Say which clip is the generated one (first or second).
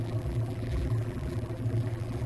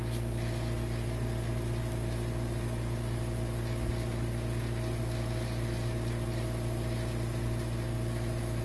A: first